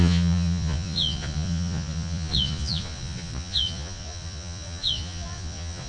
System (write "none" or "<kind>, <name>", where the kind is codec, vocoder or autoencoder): vocoder, Vocos